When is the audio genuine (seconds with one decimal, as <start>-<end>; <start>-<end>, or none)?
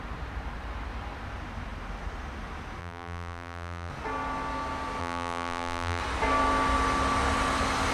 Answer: 0.0-2.8; 3.9-5.0; 6.0-7.9